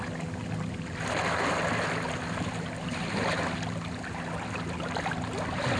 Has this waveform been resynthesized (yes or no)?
no